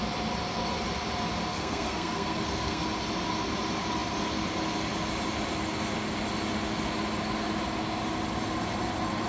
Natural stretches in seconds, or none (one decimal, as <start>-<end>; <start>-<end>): 0.0-1.5; 2.8-9.3